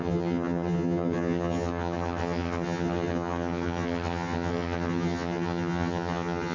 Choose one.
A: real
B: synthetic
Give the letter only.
B